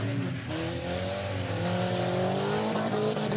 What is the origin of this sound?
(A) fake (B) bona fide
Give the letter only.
B